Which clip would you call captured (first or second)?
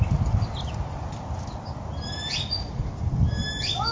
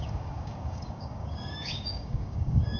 first